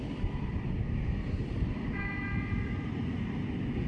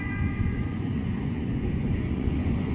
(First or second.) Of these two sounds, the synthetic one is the second